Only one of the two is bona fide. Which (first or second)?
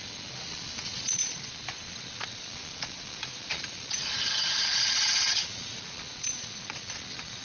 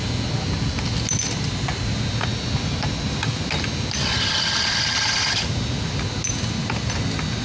second